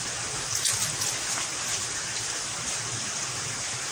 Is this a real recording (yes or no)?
yes